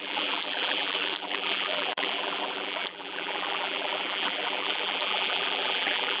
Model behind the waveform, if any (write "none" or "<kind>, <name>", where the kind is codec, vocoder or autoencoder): vocoder, BigVGAN v2